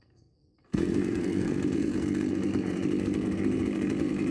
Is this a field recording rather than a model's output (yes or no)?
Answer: no